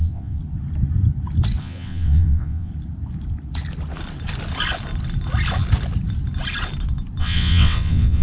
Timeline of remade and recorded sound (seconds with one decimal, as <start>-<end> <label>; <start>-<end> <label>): 0.0-0.4 remade; 0.4-1.6 recorded; 1.6-2.7 remade; 2.7-7.2 recorded; 7.2-8.2 remade